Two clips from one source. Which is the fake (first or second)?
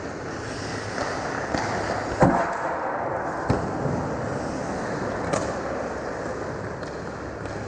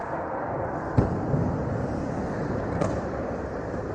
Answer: second